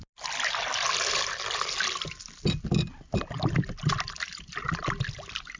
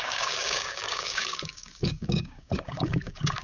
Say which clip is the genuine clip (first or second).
first